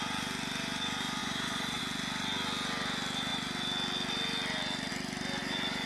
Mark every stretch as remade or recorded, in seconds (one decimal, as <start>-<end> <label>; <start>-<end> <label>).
0.0-1.2 recorded; 1.2-1.8 remade; 1.8-5.9 recorded